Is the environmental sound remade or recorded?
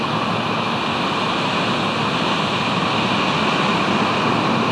recorded